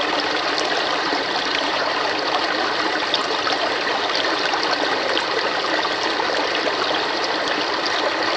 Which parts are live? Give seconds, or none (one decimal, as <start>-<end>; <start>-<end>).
0.0-1.1; 1.8-8.4